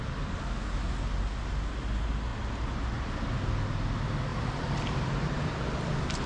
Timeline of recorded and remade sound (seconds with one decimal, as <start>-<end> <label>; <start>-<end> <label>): 0.0-4.3 recorded; 4.3-5.5 remade; 5.5-6.3 recorded